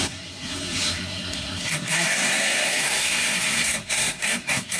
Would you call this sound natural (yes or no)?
no